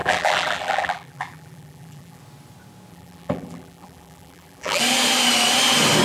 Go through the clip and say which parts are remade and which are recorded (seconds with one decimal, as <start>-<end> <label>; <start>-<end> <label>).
0.0-2.2 remade; 2.2-2.9 recorded; 2.9-4.8 remade; 4.8-6.0 recorded